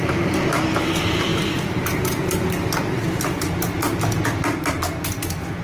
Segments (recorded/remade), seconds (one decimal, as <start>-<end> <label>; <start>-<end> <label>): 0.0-5.6 recorded